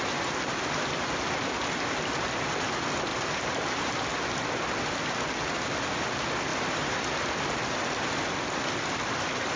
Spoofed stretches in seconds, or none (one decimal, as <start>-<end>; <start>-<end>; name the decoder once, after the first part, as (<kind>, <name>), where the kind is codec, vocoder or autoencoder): 3.1-4.1 (vocoder, BigVGAN v2); 6.5-7.1